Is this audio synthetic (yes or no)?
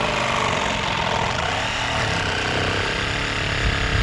yes